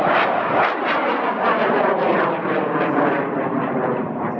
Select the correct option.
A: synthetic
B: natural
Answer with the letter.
B